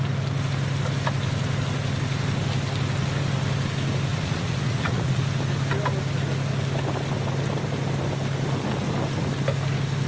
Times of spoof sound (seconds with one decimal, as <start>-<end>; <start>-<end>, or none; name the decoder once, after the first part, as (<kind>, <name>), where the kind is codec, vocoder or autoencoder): 4.1-5.2 (vocoder, Vocos)